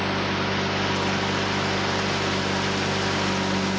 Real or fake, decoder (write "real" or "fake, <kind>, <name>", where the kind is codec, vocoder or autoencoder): real